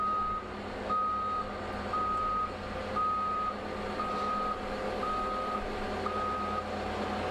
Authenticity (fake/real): real